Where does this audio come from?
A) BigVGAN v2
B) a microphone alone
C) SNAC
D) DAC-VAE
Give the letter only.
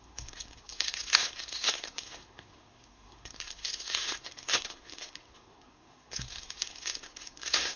C